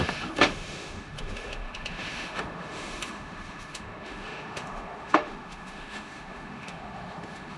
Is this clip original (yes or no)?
no